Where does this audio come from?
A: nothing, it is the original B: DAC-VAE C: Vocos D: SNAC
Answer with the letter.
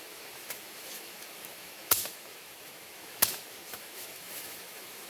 B